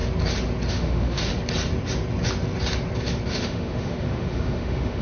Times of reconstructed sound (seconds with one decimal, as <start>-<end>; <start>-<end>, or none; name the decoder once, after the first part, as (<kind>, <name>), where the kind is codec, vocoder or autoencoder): 0.7-1.3 (autoencoder, DAC-VAE); 3.3-5.0